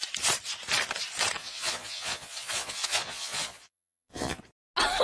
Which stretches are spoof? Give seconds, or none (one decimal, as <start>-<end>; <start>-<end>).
1.4-4.4